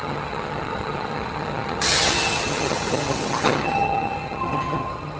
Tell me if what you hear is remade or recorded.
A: remade